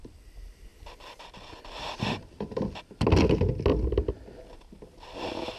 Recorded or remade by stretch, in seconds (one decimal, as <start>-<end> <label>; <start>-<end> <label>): 0.0-5.6 recorded